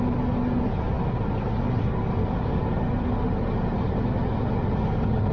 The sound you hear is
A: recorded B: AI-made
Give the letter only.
A